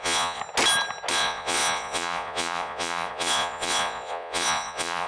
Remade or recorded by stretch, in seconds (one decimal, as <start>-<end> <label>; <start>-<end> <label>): 0.0-0.4 remade; 0.4-1.1 recorded; 1.1-5.1 remade